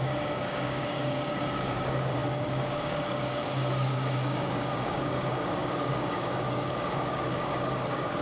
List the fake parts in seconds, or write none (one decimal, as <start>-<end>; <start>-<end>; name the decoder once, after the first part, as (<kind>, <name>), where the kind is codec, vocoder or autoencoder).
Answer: 0.0-8.2 (codec, DAC)